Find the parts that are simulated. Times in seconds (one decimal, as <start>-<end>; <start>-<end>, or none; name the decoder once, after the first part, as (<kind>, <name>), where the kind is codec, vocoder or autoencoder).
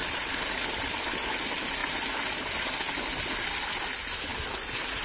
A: 0.0-0.7 (vocoder, BigVGAN v2)